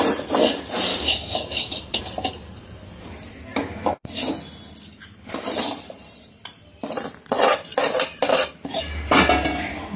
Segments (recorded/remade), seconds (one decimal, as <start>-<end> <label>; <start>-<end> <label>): 0.0-0.9 recorded; 0.9-2.0 remade; 2.0-10.0 recorded